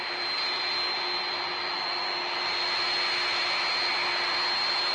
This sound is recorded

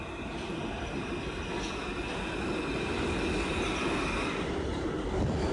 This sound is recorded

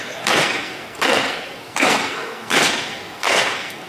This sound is remade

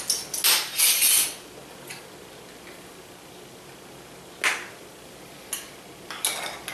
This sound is recorded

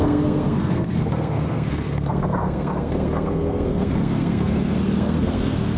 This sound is remade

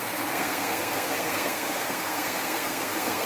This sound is remade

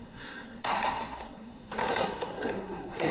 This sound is remade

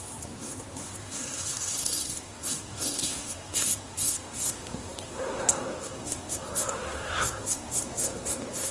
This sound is remade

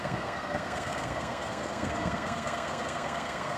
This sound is remade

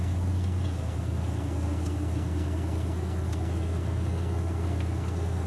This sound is remade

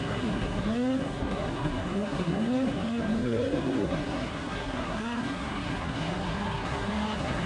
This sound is remade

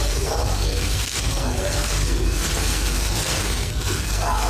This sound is remade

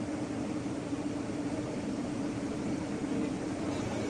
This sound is recorded